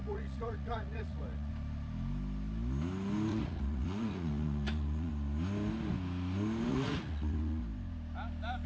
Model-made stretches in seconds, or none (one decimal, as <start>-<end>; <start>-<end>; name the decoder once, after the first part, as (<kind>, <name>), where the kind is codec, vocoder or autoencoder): 0.0-1.5 (vocoder, Vocos); 3.3-5.1; 6.7-7.6